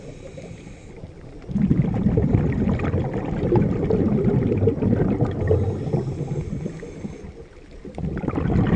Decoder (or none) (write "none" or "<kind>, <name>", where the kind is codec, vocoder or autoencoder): none